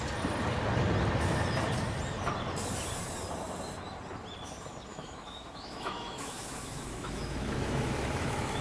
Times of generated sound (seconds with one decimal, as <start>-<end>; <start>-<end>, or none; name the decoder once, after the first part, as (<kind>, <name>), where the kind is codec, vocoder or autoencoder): 4.9-8.6 (autoencoder, DAC-VAE)